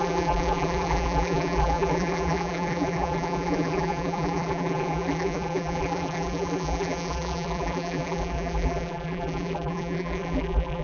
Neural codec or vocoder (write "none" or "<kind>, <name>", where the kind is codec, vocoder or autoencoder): vocoder, BigVGAN v2